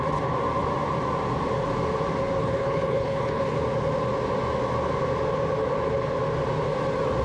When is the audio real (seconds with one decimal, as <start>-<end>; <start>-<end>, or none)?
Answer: 0.0-2.4; 3.6-7.2